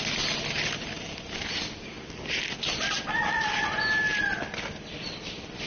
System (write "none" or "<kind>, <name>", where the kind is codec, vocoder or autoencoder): none